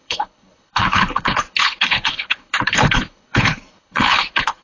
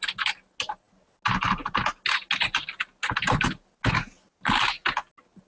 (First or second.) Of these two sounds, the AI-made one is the first